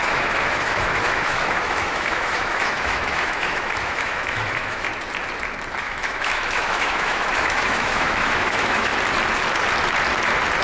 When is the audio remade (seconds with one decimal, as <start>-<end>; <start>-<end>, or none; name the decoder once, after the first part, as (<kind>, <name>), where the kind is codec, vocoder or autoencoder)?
0.0-4.9 (autoencoder, DAC-VAE); 5.8-8.9